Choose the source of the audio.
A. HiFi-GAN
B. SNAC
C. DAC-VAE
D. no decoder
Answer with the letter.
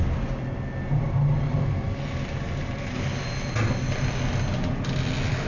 D